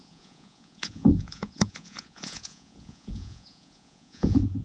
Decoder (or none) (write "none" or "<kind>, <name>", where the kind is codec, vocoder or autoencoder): vocoder, Vocos